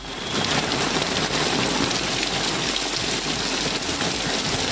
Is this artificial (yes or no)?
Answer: no